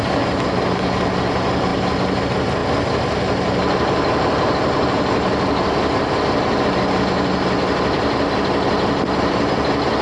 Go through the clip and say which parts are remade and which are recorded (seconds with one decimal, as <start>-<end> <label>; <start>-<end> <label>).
0.0-10.0 recorded